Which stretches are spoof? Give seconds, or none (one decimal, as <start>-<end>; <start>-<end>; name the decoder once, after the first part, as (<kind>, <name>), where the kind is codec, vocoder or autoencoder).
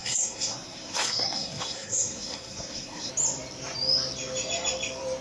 0.0-3.1 (codec, SNAC)